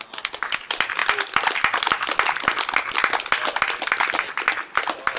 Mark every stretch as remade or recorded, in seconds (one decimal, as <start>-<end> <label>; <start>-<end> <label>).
0.0-5.2 recorded